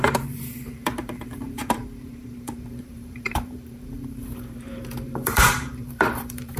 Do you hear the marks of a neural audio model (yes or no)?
yes